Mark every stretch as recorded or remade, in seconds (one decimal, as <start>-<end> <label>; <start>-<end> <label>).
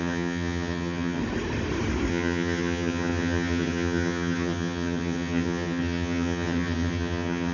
0.0-1.2 remade; 1.2-2.1 recorded; 2.1-7.5 remade